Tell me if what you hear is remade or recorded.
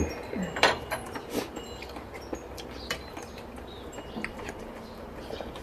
remade